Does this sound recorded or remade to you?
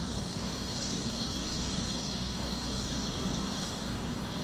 remade